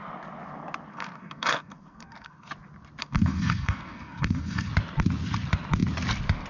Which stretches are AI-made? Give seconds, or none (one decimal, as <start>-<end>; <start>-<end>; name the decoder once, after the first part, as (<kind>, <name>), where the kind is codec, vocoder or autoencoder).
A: 0.9-2.5 (codec, SNAC); 3.0-4.7